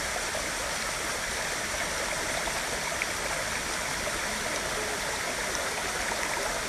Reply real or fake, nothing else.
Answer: real